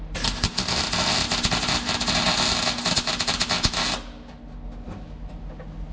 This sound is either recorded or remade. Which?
recorded